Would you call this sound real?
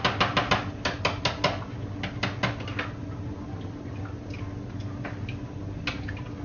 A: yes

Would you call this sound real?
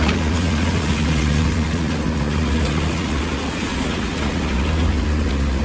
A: no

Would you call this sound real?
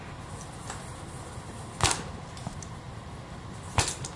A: yes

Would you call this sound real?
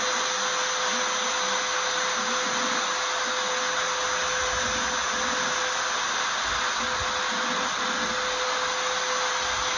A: yes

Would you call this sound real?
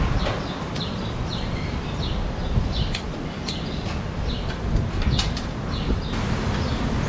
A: yes